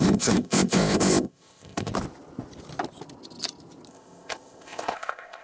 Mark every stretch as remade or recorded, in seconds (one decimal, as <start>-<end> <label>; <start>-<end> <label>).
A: 0.0-1.9 remade; 1.9-3.9 recorded; 3.9-5.4 remade